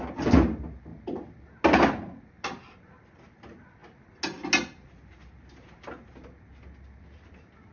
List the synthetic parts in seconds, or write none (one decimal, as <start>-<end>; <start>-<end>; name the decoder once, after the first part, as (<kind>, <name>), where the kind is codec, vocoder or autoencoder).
none

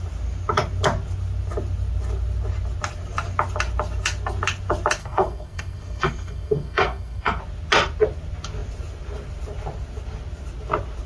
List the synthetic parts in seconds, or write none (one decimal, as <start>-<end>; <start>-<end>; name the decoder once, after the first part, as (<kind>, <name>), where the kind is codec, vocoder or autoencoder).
5.0-7.4 (codec, SNAC)

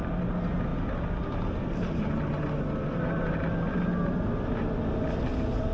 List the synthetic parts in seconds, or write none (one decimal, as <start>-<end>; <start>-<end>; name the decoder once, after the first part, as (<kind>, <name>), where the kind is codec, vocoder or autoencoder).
none

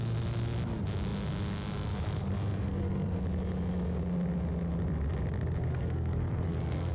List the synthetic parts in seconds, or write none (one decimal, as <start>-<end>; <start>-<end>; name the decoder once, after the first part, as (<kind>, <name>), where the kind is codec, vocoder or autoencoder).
2.5-3.2 (codec, SNAC); 5.7-6.9

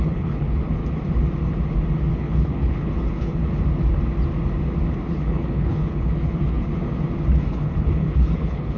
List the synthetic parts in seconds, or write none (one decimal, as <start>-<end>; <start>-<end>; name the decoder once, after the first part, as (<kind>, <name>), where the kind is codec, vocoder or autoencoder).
0.0-0.8 (codec, HILCodec); 2.1-3.4; 5.2-6.8; 7.5-8.8